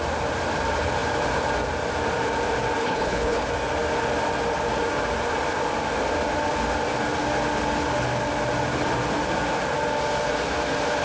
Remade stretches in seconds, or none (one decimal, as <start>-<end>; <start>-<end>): 2.8-3.5